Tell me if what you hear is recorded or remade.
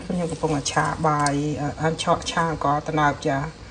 recorded